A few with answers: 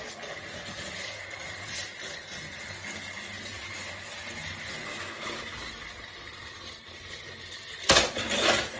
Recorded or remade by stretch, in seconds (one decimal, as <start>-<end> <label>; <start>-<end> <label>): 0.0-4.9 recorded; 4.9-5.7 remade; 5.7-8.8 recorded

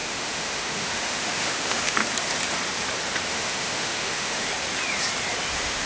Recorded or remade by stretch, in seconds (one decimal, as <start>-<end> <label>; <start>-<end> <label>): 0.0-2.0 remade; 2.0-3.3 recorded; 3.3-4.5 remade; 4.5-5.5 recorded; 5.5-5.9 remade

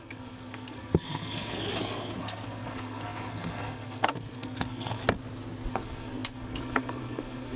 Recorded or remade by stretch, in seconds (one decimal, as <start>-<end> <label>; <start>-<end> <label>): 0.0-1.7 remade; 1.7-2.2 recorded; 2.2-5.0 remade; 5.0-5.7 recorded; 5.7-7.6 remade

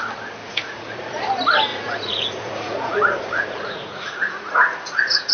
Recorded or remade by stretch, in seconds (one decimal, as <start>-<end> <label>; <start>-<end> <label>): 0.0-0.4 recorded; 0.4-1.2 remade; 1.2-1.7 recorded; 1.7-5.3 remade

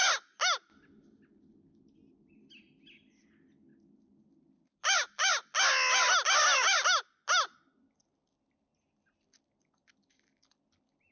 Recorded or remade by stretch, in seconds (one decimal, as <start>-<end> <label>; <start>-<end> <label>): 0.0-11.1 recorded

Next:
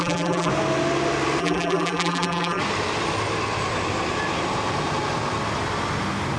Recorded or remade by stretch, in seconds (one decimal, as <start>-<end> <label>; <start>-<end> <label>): 0.0-0.5 remade; 0.5-1.4 recorded; 1.4-2.6 remade; 2.6-6.4 recorded